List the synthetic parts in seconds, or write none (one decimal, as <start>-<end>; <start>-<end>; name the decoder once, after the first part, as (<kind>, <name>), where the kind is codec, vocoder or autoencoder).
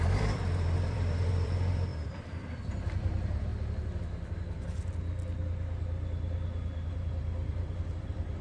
0.0-3.5 (vocoder, BigVGAN v2); 6.9-8.4